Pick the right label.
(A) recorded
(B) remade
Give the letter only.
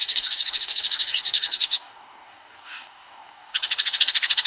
B